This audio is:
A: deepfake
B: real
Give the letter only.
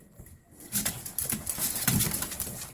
B